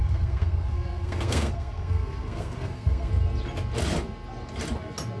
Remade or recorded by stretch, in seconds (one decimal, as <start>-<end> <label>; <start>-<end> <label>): 0.0-3.1 remade; 3.1-5.2 recorded